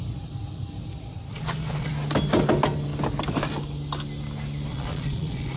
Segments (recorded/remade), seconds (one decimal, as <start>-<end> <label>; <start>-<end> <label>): 0.0-1.3 recorded; 1.3-1.9 remade; 1.9-4.7 recorded; 4.7-5.6 remade